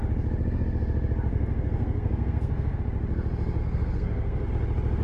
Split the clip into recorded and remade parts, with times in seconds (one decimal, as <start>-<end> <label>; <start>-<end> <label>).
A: 0.0-1.3 recorded; 1.3-2.8 remade; 2.8-3.6 recorded; 3.6-4.5 remade; 4.5-5.0 recorded